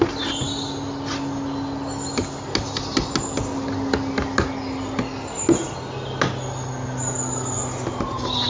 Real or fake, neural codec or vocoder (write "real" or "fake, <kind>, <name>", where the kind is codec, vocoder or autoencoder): real